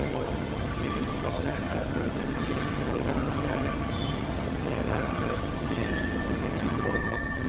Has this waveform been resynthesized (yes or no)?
yes